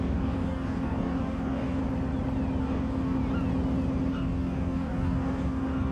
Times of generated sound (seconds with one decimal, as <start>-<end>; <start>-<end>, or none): 0.0-1.8; 2.6-3.2; 4.1-5.9